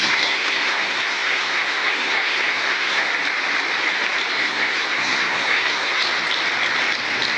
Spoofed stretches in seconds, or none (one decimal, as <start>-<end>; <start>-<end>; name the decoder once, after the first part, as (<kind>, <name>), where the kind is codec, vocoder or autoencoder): 0.0-3.1 (codec, SNAC); 4.3-6.0